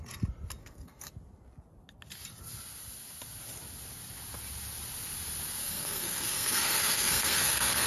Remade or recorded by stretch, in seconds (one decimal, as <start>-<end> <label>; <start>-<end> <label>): 0.0-0.6 recorded; 0.6-1.1 remade; 1.1-5.6 recorded; 5.6-7.9 remade